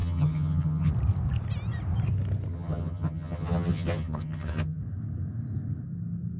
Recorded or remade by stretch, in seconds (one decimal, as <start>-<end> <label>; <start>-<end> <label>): 0.0-0.9 remade; 0.9-2.5 recorded; 2.5-4.8 remade; 4.8-6.4 recorded